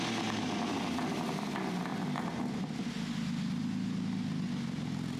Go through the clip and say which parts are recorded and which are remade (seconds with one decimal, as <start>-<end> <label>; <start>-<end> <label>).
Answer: 0.0-5.2 recorded